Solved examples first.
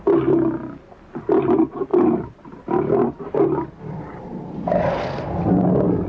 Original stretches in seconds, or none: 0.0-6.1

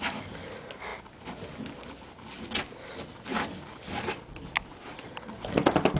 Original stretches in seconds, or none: 0.0-6.0

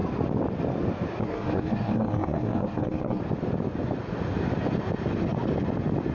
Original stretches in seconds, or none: 0.0-1.2; 3.2-6.1